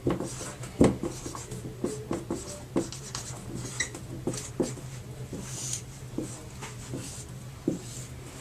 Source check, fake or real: real